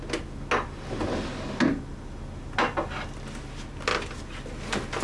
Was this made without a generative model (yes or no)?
yes